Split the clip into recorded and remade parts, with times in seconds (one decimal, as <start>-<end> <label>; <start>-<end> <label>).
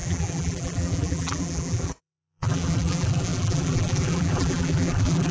0.0-5.3 remade